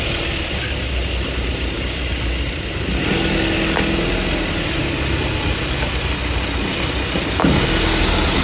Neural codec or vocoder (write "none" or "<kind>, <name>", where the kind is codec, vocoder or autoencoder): none